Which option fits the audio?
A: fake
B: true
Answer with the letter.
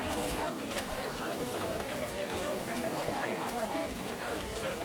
A